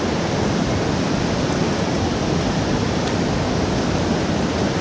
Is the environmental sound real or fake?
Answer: real